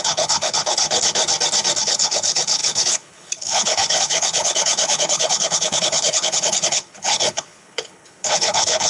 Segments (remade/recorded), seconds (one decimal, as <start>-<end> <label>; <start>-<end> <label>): 0.0-1.2 remade; 1.2-1.8 recorded; 1.8-8.9 remade